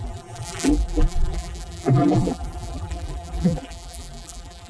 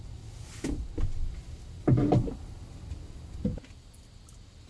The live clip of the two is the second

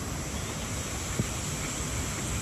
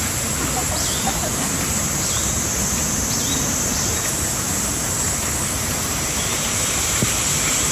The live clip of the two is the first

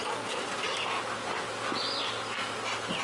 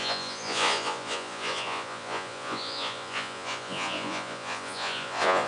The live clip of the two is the first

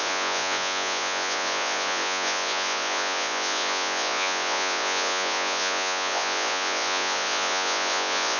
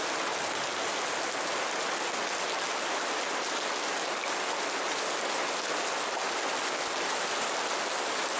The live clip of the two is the second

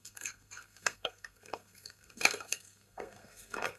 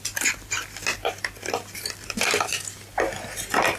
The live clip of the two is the second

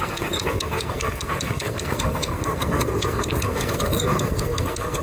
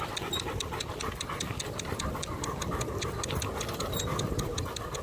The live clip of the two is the second